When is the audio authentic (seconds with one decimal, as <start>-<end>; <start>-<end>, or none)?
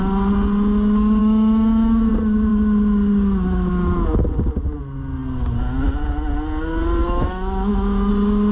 0.0-1.2; 2.1-7.0; 8.1-8.5